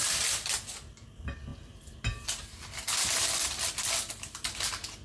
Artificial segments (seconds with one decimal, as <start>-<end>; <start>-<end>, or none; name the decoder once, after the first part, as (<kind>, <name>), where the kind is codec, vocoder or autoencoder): none